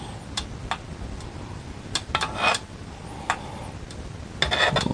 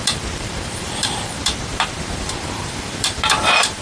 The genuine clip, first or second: first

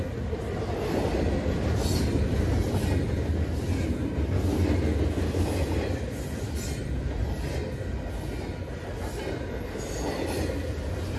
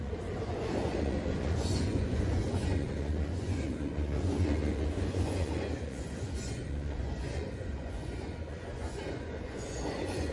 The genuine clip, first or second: first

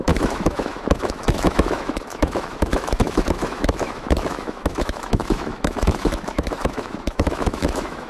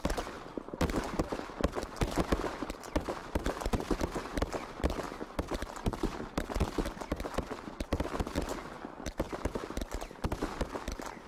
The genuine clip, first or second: second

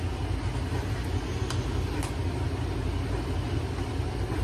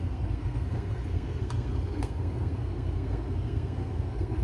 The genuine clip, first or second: first